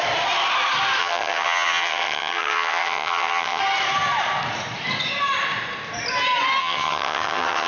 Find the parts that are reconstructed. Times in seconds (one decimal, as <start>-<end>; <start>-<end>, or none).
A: 1.0-3.6; 6.6-7.7